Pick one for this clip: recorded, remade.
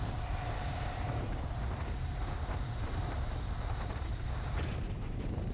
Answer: remade